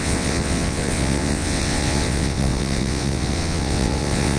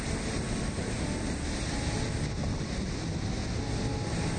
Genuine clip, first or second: second